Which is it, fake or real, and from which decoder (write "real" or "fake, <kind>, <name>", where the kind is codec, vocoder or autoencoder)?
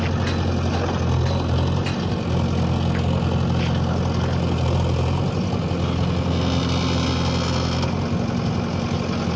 real